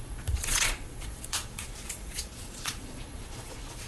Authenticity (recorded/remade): remade